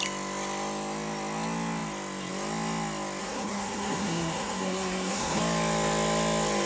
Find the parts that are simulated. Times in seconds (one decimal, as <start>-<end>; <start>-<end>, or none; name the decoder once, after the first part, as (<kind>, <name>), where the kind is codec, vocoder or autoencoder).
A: 3.2-5.4 (codec, SNAC)